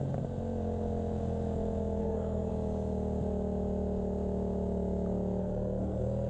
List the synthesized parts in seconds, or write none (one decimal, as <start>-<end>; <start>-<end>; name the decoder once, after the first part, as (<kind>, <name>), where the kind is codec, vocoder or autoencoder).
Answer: 2.0-2.5 (codec, SNAC); 5.4-6.3